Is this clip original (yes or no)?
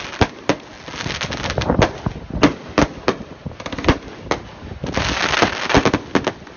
yes